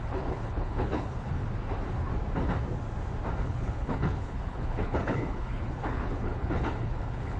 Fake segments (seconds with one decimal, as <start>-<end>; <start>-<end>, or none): 0.0-1.4; 3.4-7.4